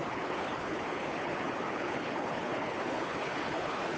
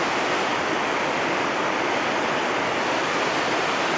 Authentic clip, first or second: second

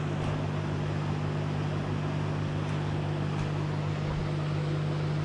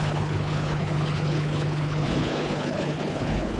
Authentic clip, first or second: first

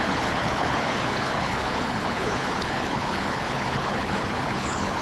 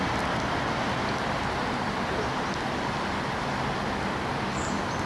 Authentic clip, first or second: second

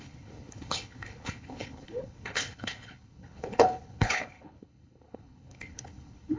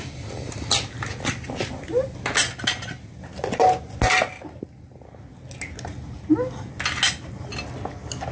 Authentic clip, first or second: second